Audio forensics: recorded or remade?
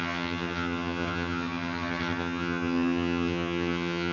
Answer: remade